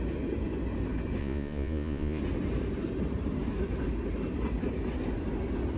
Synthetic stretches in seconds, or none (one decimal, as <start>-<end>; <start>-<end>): 1.2-2.2